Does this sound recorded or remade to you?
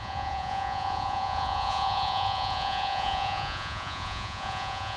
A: remade